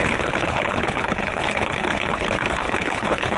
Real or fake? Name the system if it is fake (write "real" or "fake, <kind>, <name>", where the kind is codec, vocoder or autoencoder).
fake, codec, HILCodec